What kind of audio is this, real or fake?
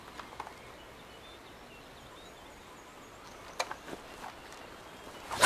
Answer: real